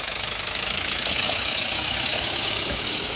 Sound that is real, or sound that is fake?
fake